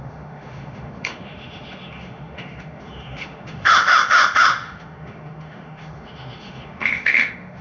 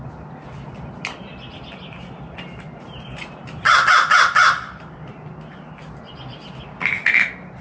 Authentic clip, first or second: second